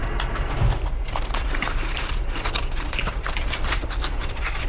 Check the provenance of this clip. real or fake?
fake